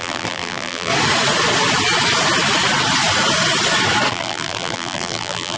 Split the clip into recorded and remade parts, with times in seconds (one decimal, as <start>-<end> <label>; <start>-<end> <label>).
0.0-0.9 remade; 0.9-4.1 recorded; 4.1-5.6 remade